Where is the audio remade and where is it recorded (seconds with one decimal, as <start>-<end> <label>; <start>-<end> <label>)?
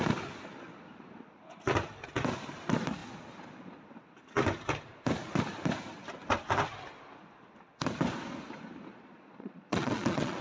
0.0-8.9 recorded; 8.9-10.4 remade